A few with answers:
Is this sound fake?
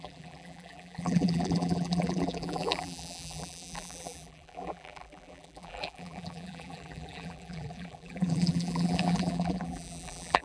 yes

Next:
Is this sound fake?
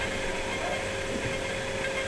no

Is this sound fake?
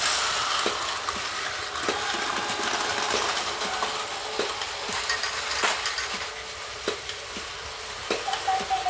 no